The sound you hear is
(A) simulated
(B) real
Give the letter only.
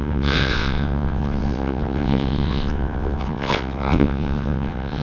A